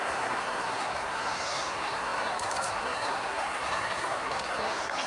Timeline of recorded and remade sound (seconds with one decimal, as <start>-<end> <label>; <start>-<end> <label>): 0.0-5.1 remade